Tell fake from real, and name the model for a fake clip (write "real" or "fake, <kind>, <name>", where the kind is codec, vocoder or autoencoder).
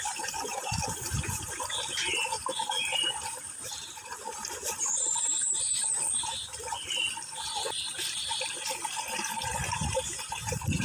fake, vocoder, BigVGAN v2